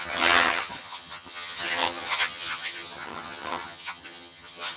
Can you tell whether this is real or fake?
fake